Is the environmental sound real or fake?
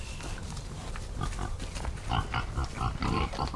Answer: real